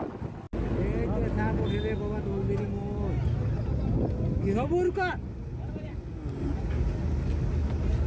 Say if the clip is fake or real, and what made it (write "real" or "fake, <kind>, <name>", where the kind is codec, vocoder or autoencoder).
real